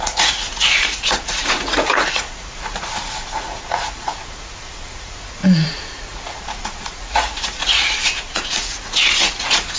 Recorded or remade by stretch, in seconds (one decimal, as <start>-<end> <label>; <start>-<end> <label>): 0.0-9.8 remade